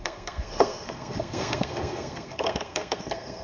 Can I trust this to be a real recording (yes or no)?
no